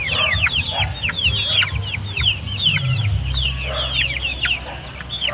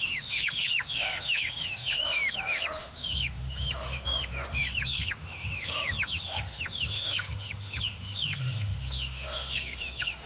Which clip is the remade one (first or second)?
second